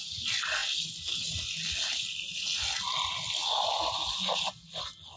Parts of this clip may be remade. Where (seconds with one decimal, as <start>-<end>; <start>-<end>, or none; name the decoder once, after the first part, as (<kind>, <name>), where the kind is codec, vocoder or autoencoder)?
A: none